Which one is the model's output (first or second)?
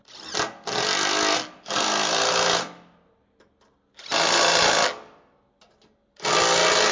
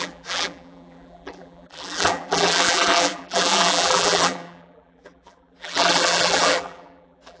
second